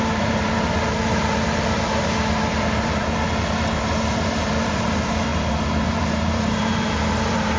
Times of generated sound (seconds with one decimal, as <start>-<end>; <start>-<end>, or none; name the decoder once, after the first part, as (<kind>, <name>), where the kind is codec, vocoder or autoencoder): 0.0-5.3 (vocoder, BigVGAN v2); 5.9-7.6